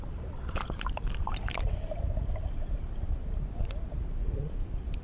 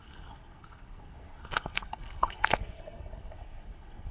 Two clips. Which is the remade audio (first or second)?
second